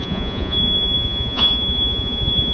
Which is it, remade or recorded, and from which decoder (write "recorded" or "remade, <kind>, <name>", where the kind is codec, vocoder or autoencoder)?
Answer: remade, vocoder, Vocos